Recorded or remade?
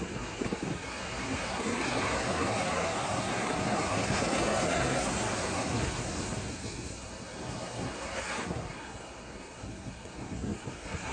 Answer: remade